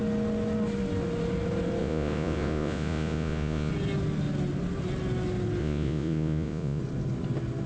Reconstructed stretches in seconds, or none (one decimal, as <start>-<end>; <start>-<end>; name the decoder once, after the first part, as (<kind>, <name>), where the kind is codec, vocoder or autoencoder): 1.8-3.7 (vocoder, Vocos); 5.6-6.8